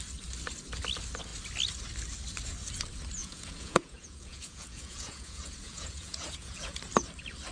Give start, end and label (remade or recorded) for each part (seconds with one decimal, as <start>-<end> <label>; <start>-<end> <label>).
0.0-3.2 recorded; 3.2-6.8 remade; 6.8-7.5 recorded